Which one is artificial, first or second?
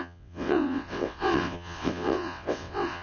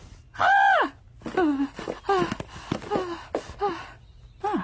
first